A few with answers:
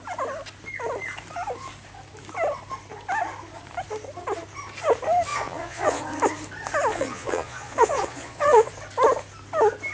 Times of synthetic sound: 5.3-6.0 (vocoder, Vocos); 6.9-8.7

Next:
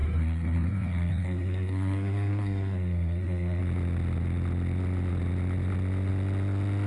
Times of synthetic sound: 0.0-3.6 (codec, SNAC)

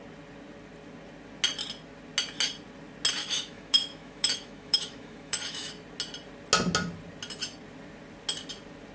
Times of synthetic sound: 3.2-5.7 (autoencoder, DAC-VAE)